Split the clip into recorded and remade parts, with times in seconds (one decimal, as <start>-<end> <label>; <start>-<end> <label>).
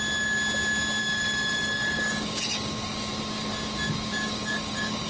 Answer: 0.0-1.0 recorded; 1.0-3.1 remade; 3.1-4.2 recorded; 4.2-5.1 remade